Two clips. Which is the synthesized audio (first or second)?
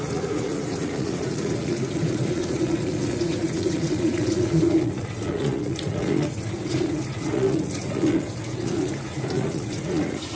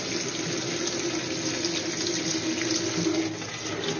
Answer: first